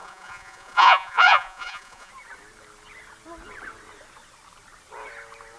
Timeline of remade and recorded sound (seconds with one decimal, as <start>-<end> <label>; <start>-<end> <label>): 0.0-2.1 remade; 2.1-5.6 recorded